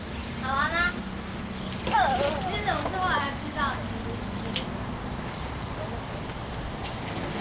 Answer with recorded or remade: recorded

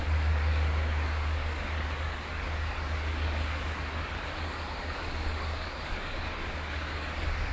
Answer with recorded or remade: remade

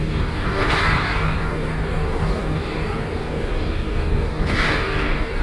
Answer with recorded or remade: remade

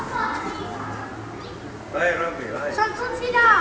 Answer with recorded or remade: recorded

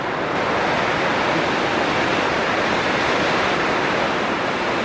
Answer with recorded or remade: recorded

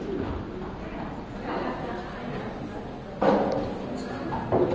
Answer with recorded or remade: recorded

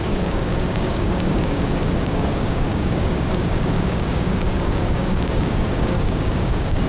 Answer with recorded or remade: remade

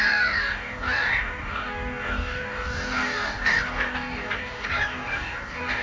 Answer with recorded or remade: remade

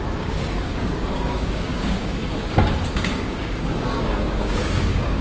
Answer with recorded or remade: remade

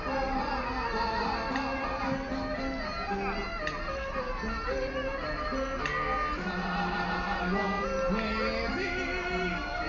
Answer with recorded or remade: recorded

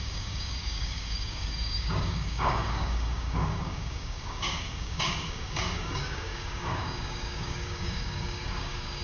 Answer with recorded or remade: remade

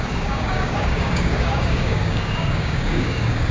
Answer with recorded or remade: remade